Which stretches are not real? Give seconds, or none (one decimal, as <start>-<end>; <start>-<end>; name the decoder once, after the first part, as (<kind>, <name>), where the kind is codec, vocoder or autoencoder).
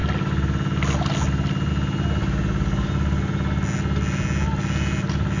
none